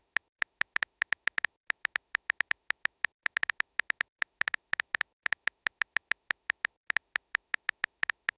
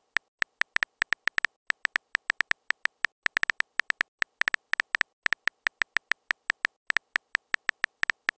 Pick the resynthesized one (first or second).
first